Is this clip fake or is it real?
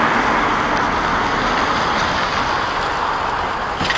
real